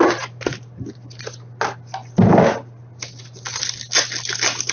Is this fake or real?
real